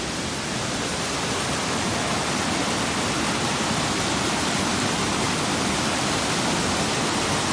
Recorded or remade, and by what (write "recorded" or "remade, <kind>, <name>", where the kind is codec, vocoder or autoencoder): recorded